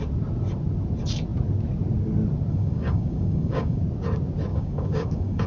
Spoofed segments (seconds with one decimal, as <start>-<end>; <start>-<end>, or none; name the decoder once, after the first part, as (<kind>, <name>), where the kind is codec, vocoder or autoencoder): 2.5-3.8 (codec, DAC); 4.5-5.5